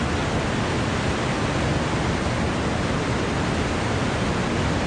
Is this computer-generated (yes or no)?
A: no